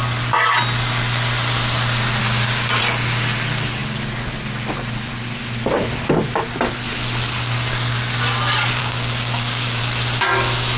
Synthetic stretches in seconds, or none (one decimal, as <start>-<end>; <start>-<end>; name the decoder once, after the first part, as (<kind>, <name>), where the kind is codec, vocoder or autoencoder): 2.2-2.8 (codec, DAC); 8.8-9.8